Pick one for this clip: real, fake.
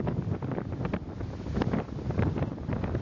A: real